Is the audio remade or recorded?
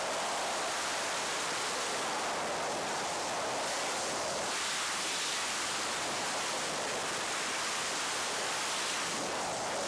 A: recorded